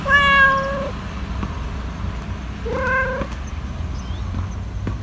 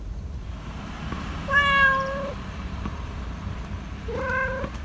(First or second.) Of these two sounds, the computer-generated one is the second